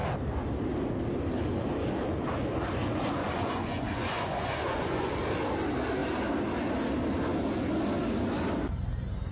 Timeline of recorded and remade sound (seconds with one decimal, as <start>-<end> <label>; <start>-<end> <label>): 0.0-3.2 recorded; 3.2-5.1 remade; 5.1-9.3 recorded